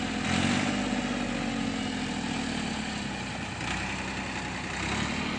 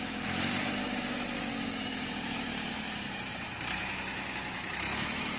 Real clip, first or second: first